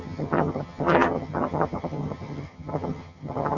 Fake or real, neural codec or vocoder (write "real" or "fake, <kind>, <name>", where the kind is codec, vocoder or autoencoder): fake, vocoder, HiFi-GAN